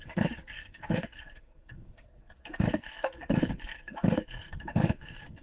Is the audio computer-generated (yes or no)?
yes